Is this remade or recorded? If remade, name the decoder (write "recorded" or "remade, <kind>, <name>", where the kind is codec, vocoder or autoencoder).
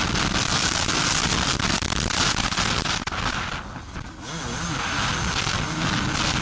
recorded